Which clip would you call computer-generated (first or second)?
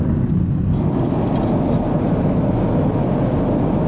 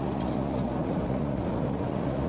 second